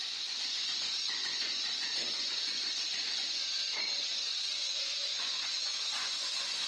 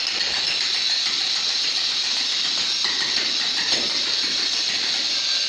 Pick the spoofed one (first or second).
first